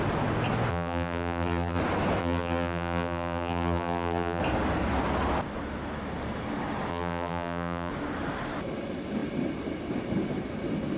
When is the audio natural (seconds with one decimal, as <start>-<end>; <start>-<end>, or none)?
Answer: 0.0-0.7; 1.8-2.2; 4.4-6.9; 7.9-11.0